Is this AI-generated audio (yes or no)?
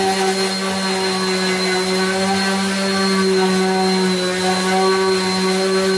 no